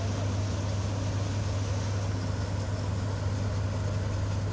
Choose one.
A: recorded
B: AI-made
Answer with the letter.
A